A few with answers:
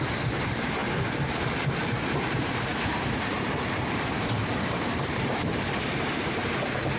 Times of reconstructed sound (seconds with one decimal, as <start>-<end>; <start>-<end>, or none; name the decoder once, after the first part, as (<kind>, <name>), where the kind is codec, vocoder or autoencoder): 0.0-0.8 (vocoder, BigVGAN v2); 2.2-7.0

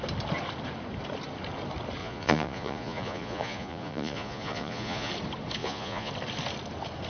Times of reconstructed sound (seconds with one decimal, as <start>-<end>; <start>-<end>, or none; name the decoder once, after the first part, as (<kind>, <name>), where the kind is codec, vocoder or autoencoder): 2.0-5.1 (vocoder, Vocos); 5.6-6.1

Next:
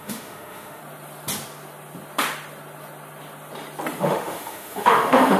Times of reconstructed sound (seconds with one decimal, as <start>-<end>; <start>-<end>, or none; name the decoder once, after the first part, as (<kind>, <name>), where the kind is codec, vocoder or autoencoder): 0.0-0.8 (autoencoder, DAC-VAE); 4.0-5.4

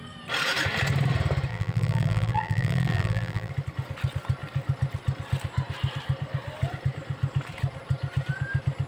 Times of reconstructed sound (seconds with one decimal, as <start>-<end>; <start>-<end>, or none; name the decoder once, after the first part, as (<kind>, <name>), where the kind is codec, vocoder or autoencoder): 1.5-3.5 (vocoder, BigVGAN v2)